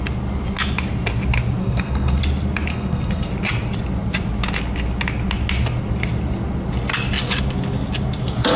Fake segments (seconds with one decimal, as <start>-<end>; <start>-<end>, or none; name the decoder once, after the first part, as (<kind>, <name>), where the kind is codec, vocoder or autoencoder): 1.6-2.2 (codec, SNAC); 2.7-3.3